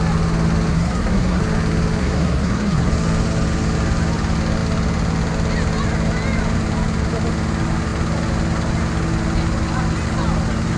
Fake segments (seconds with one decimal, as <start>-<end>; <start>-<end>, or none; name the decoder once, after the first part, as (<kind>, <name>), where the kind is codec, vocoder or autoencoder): 0.7-1.4 (codec, SNAC); 2.0-2.9